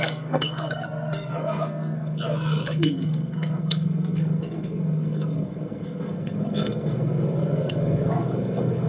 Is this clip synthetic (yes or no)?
yes